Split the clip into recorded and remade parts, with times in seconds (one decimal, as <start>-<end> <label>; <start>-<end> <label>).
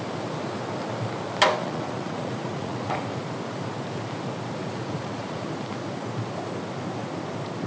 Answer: 0.0-1.6 recorded; 1.6-3.2 remade; 3.2-4.6 recorded; 4.6-5.5 remade; 5.5-7.7 recorded